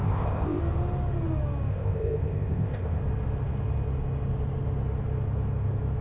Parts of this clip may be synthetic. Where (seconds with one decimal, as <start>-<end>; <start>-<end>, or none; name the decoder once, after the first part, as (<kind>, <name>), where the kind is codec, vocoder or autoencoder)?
0.0-0.6 (codec, ZipCodec); 1.7-3.0